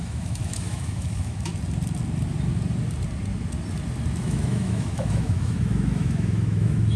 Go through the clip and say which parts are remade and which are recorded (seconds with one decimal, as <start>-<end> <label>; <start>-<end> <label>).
0.0-1.5 remade; 1.5-4.2 recorded; 4.2-7.0 remade